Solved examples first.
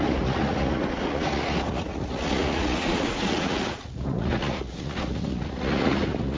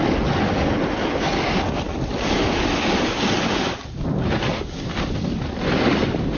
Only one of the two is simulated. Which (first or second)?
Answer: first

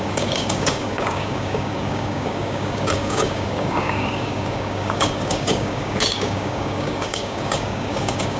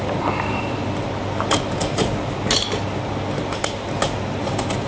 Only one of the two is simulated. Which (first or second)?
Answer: first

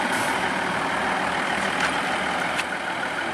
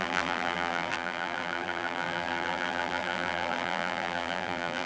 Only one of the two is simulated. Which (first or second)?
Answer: second